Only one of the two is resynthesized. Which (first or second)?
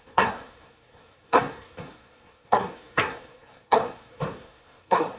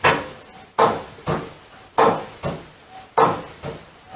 first